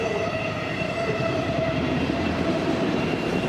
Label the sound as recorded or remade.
remade